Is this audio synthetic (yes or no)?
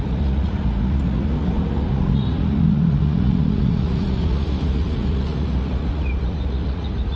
yes